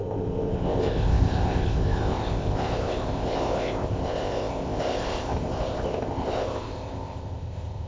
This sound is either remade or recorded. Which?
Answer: remade